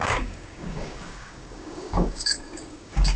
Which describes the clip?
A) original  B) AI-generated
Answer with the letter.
B